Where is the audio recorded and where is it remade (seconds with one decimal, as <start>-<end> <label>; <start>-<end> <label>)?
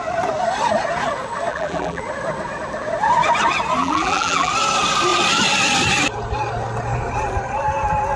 0.0-1.5 recorded; 1.5-2.0 remade; 2.0-3.8 recorded; 3.8-4.5 remade; 4.5-8.2 recorded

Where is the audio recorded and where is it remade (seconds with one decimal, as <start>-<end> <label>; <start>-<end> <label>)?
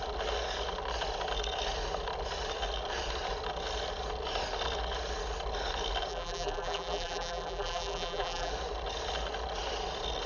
0.0-6.1 recorded; 6.1-8.5 remade; 8.5-10.3 recorded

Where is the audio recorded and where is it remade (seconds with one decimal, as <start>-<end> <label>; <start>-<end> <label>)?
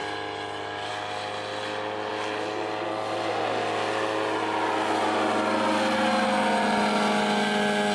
0.0-7.9 recorded